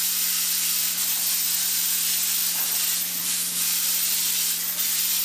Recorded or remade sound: recorded